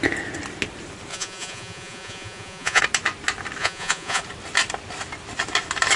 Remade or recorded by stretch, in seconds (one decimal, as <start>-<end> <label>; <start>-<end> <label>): 0.0-1.1 recorded; 1.1-2.8 remade; 2.8-3.6 recorded; 3.6-4.2 remade; 4.2-6.0 recorded

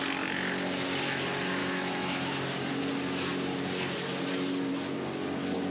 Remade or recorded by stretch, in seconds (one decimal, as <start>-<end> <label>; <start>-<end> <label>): 0.0-1.6 recorded; 1.6-2.2 remade; 2.2-5.7 recorded

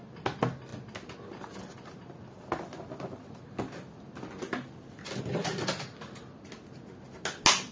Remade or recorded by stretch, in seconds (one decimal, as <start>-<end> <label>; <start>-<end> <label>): 0.0-7.7 recorded

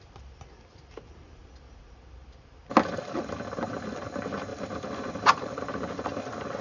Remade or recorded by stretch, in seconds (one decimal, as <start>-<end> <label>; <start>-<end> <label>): 0.0-4.5 recorded; 4.5-5.5 remade; 5.5-6.6 recorded

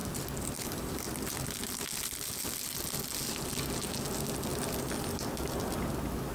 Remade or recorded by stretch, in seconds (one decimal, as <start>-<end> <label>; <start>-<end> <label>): 0.0-6.3 recorded

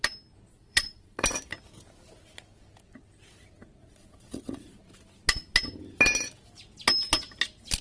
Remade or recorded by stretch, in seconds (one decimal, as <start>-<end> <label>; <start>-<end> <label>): 0.0-0.5 recorded; 0.5-1.2 remade; 1.2-3.8 recorded; 3.8-4.8 remade; 4.8-7.8 recorded